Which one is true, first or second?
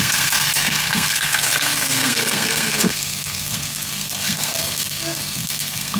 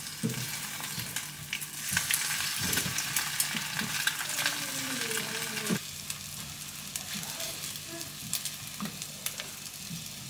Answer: second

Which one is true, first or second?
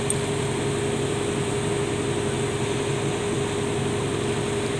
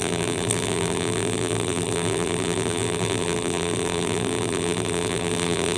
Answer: first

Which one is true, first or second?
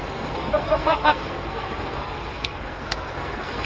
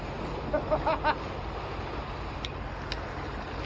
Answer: second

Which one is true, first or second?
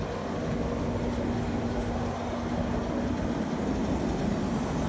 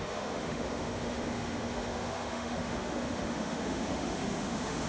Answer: first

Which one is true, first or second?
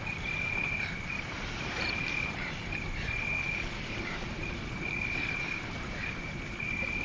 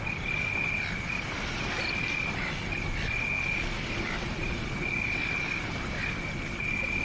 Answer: second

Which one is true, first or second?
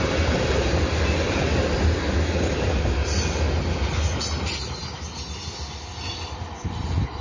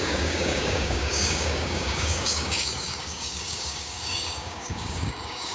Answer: first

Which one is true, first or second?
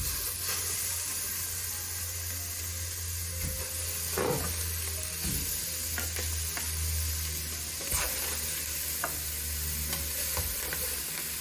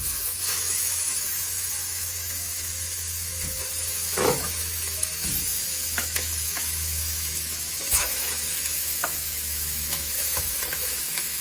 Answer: first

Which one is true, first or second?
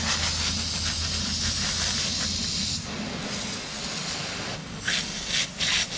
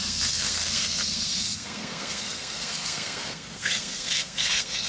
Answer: first